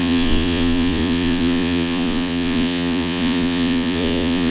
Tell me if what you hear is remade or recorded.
remade